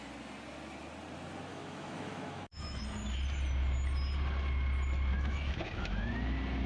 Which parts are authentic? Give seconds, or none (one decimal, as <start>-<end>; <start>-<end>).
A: 0.0-1.5; 2.8-5.1; 6.1-6.7

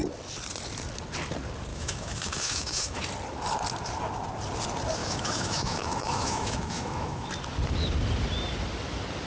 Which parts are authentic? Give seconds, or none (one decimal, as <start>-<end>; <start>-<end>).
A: 0.0-1.7; 3.0-5.0; 7.3-9.3

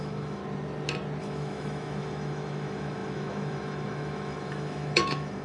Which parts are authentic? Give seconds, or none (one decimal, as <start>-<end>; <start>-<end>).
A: 0.4-1.2

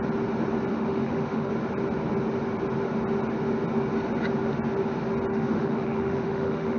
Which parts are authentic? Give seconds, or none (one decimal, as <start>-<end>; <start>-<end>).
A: 0.0-0.7; 1.5-5.3

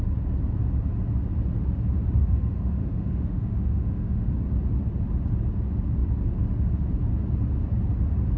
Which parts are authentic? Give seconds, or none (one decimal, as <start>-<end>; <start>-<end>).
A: 0.0-2.2; 4.3-8.4